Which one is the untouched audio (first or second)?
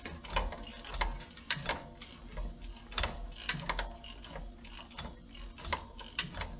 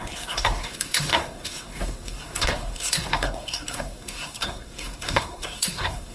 first